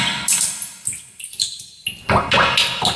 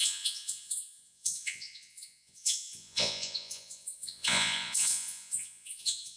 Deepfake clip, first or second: second